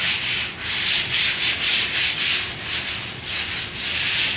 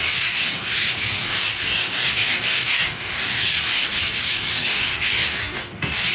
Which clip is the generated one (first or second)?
second